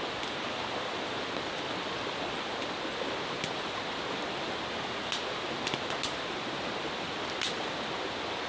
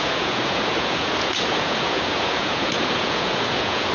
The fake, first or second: second